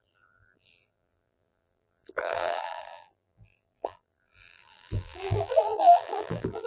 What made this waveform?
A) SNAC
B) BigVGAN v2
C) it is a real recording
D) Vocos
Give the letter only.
B